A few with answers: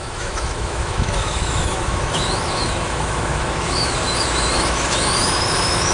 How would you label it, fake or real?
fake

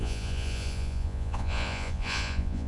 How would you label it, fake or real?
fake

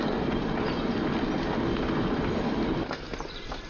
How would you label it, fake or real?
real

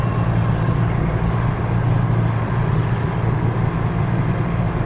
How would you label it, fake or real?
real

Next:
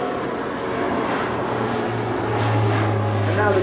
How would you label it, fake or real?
real